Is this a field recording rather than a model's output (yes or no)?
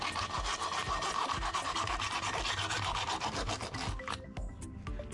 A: yes